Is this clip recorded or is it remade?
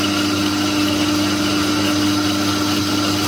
recorded